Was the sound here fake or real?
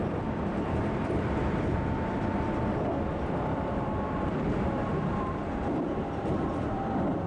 fake